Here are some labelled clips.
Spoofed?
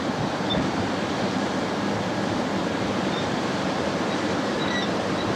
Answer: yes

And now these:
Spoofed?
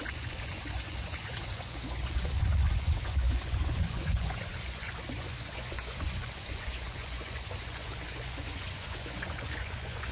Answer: yes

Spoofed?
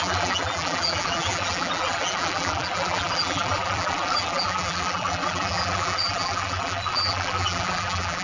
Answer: yes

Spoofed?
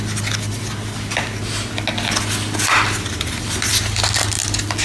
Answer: no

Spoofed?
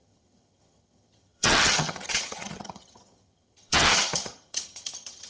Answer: yes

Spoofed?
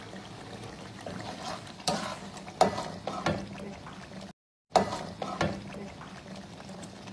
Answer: no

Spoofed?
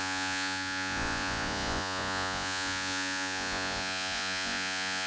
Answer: yes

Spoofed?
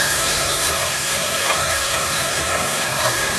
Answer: yes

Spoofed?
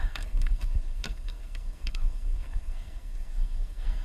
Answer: yes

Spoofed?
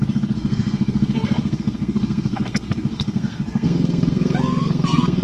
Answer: yes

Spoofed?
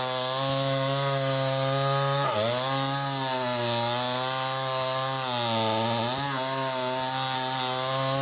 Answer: no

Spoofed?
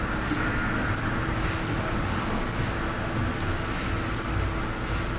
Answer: no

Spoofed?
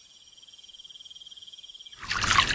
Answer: no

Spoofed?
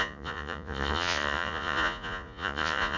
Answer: yes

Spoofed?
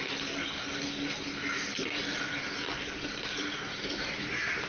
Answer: no